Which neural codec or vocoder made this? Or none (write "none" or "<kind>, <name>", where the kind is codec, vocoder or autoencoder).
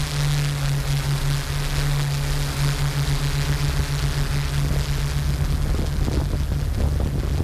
none